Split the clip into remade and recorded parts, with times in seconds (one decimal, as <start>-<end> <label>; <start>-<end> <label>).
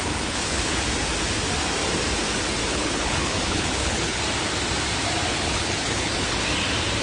0.0-0.8 remade; 0.8-2.7 recorded; 2.7-4.2 remade; 4.2-5.3 recorded; 5.3-6.4 remade; 6.4-7.0 recorded